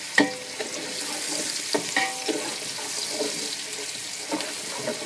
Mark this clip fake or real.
real